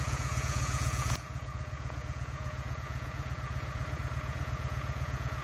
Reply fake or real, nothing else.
fake